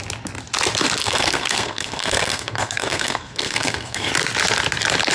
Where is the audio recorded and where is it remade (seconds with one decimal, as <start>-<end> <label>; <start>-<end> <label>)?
0.0-1.0 recorded; 1.0-4.1 remade; 4.1-5.1 recorded